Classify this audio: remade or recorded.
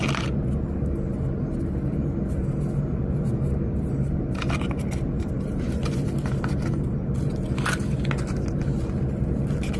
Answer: recorded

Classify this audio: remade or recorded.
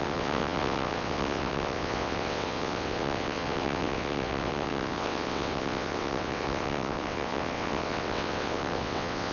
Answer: remade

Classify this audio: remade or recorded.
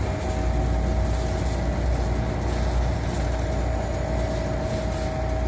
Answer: recorded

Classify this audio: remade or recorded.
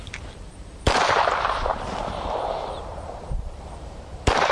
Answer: remade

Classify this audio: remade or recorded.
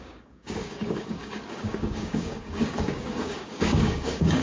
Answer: remade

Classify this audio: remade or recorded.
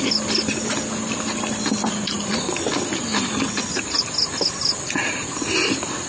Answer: recorded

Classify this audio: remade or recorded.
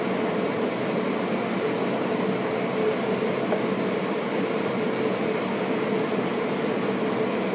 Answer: recorded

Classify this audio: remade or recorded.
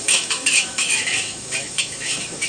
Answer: remade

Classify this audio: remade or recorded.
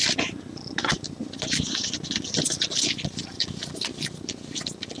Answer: recorded